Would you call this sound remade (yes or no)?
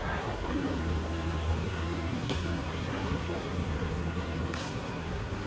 yes